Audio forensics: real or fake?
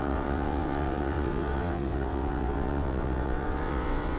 fake